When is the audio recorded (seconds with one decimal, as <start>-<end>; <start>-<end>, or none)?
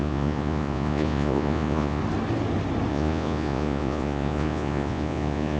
2.0-2.9